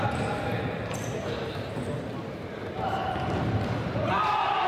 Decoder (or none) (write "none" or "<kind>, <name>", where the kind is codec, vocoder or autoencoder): vocoder, BigVGAN v2